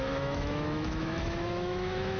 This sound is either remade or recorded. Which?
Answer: remade